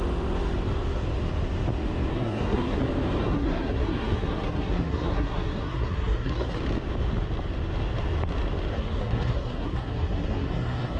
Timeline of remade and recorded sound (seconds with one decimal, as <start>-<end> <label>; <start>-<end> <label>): 0.0-2.1 recorded; 2.1-2.8 remade; 2.8-3.2 recorded; 3.2-6.6 remade; 6.6-8.7 recorded; 8.7-11.0 remade